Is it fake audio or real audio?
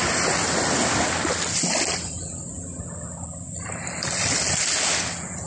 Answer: real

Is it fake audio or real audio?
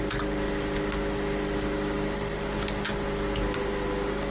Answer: real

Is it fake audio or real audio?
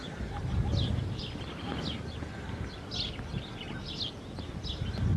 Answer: real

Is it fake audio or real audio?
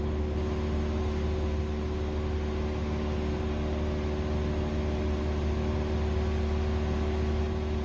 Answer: real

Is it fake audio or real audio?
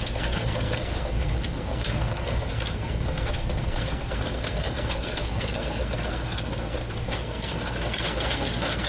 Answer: fake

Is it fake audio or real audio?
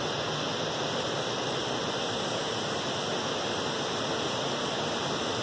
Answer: real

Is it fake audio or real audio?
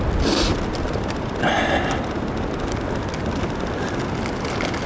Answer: real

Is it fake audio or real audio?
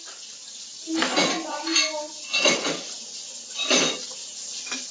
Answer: real